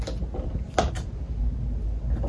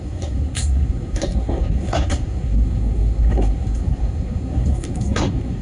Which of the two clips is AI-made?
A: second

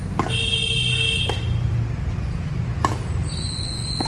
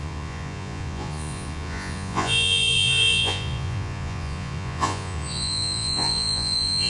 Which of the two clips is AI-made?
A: second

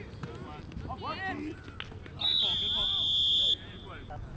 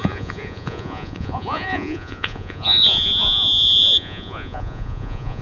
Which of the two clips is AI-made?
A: second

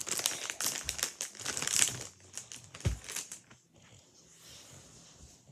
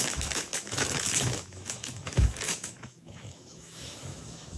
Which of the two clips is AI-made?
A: second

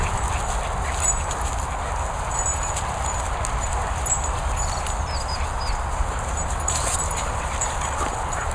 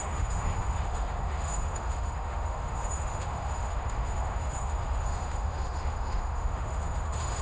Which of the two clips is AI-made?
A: second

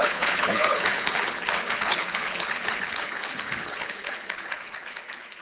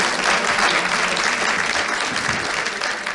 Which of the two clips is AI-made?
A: first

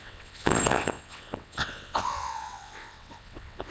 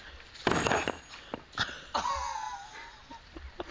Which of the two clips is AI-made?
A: first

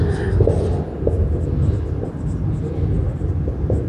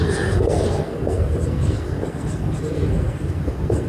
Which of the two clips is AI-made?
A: second